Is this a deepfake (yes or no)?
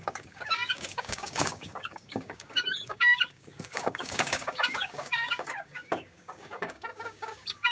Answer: yes